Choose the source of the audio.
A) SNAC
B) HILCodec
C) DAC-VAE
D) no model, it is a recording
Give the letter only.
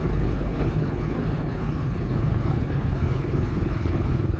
B